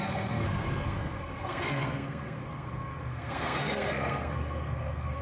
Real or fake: fake